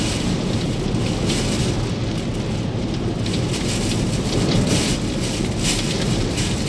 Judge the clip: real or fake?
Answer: real